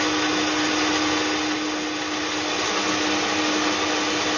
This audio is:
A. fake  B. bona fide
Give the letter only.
B